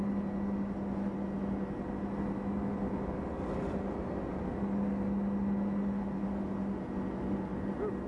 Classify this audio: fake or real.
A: real